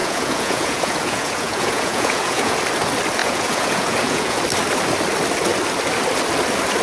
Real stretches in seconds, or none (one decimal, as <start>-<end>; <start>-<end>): 2.6-3.2; 4.4-6.8